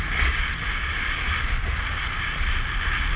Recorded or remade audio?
recorded